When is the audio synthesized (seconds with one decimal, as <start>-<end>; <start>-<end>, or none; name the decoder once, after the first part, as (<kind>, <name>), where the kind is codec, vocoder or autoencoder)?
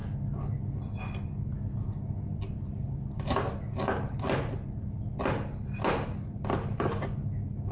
none